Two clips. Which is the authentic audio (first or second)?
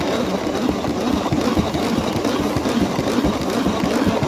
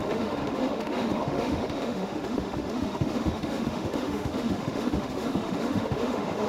first